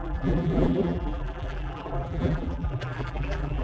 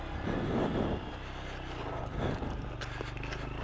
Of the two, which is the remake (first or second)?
first